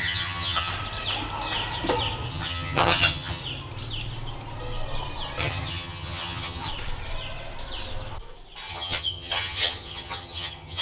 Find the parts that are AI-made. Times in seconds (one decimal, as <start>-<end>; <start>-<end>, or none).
0.0-0.7; 2.3-3.4; 5.4-6.7; 8.7-10.8